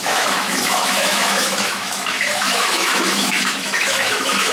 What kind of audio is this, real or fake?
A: fake